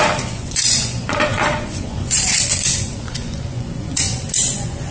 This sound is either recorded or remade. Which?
remade